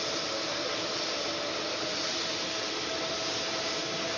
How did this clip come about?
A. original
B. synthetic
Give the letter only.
A